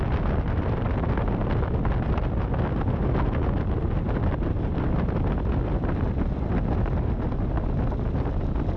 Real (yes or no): yes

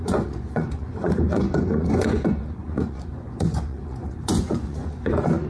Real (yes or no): no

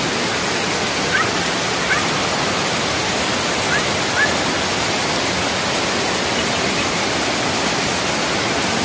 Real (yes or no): yes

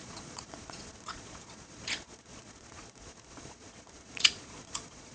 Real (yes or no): no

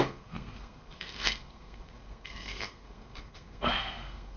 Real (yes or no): no